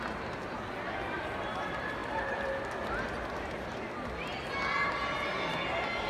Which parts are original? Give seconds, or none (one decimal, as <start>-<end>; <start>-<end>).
2.0-6.1